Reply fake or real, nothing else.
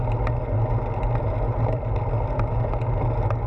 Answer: real